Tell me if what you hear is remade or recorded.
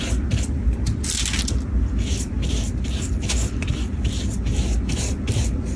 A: recorded